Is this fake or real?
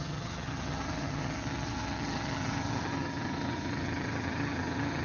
fake